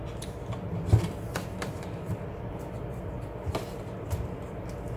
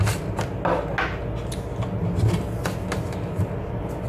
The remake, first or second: first